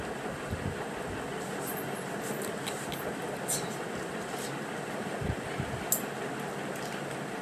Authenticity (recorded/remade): recorded